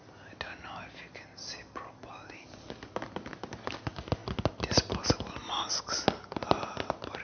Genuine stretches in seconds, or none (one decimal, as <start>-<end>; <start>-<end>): 0.0-7.2

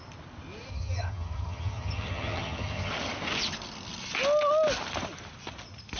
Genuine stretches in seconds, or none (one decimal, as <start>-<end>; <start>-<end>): 0.0-0.7; 2.9-6.0

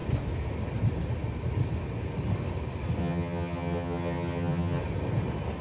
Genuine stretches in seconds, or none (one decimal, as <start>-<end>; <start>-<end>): 0.0-3.0; 4.8-5.6

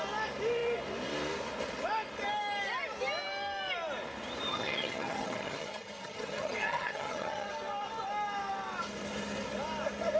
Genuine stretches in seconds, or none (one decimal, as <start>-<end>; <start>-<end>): 0.0-4.5; 7.5-10.2

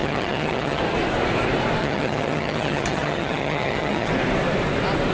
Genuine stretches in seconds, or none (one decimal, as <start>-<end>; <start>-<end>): 0.8-1.8; 4.1-5.1

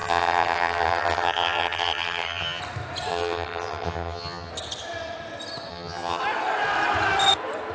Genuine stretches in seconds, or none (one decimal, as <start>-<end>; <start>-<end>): 2.6-3.1; 4.5-5.7; 6.2-7.7